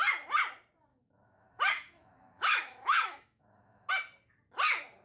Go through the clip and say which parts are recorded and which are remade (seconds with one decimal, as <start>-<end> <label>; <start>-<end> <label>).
0.0-0.9 recorded; 0.9-3.9 remade; 3.9-5.0 recorded